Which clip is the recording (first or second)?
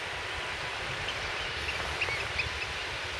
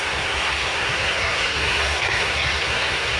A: first